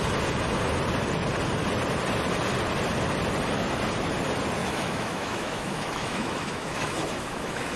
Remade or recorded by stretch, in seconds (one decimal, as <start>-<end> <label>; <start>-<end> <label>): 0.0-4.6 recorded; 4.6-7.8 remade